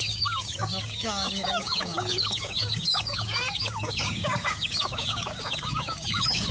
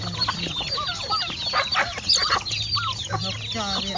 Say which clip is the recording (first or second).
second